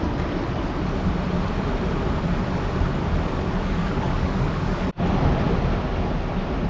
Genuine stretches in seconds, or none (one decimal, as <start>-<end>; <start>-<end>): 0.0-3.0; 4.9-6.7

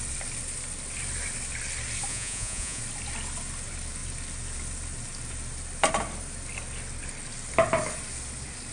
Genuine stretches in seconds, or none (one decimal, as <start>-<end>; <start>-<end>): 0.0-2.1; 2.8-8.7